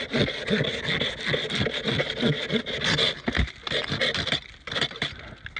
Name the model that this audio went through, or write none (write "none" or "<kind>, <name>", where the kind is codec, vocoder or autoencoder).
none